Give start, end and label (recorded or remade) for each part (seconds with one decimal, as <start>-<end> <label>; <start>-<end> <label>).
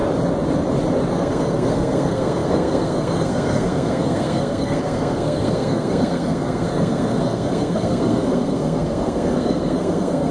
0.0-1.1 recorded; 1.1-10.3 remade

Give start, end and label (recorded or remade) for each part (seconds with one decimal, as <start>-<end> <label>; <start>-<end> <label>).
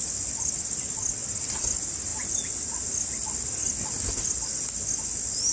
0.0-5.5 recorded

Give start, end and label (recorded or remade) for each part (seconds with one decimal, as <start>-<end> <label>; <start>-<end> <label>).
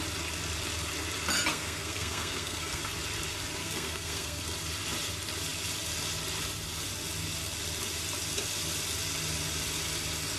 0.0-1.5 recorded; 1.5-2.8 remade; 2.8-3.6 recorded; 3.6-4.4 remade; 4.4-10.4 recorded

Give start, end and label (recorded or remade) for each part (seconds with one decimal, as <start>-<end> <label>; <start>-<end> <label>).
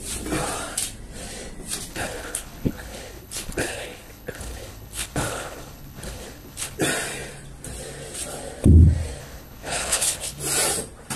0.0-1.9 recorded; 1.9-6.8 remade; 6.8-9.2 recorded; 9.2-10.4 remade; 10.4-11.2 recorded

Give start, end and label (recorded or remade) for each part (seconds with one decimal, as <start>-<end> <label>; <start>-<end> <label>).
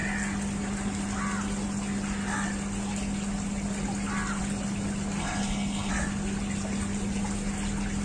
0.0-5.2 recorded; 5.2-5.9 remade; 5.9-8.0 recorded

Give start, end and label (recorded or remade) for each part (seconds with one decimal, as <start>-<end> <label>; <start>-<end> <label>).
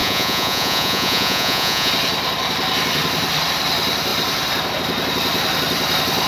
0.0-1.9 remade; 1.9-6.3 recorded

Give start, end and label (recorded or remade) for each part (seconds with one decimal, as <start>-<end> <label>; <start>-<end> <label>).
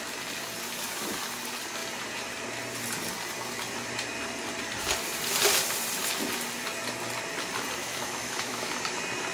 0.0-7.8 recorded; 7.8-8.7 remade; 8.7-9.3 recorded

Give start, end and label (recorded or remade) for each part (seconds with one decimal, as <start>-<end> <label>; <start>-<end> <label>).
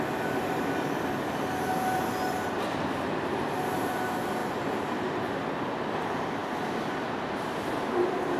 0.0-8.4 recorded